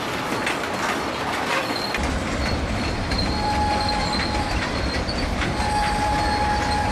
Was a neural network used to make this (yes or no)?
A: no